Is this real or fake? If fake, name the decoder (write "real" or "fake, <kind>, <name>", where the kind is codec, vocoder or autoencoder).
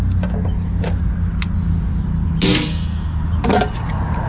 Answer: real